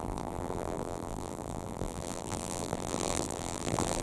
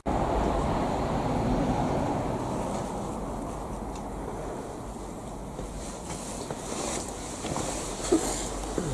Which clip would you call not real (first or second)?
first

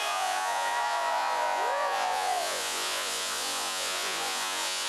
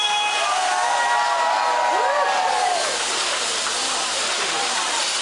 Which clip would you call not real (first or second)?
first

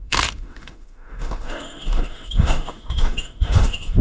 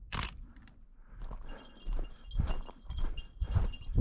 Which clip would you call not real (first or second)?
first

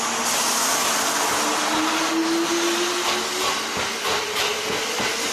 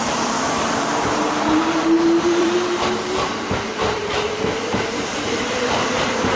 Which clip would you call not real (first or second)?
second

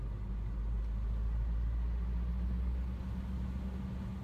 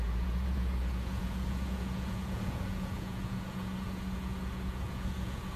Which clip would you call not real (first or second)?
second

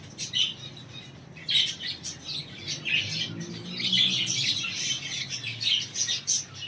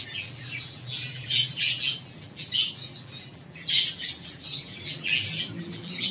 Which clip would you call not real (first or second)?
second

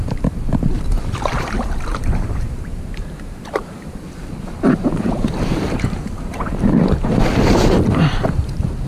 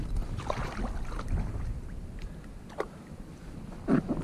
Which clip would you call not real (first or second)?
first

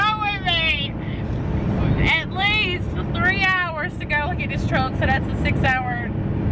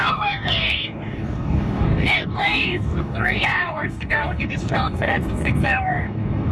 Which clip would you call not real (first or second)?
second